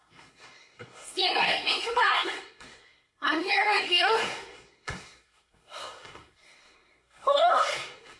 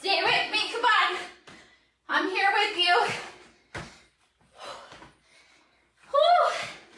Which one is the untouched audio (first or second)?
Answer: second